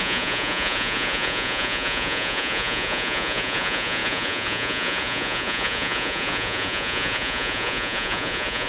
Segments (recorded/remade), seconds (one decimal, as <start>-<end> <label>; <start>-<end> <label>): 0.0-8.7 remade